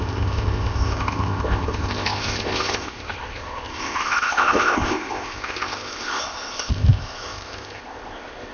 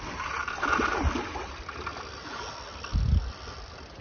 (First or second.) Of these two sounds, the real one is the second